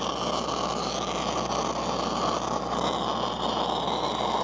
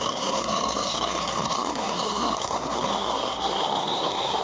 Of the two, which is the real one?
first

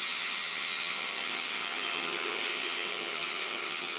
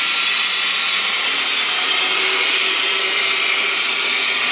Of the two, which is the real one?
second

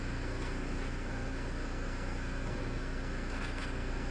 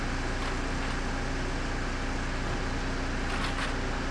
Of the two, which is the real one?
second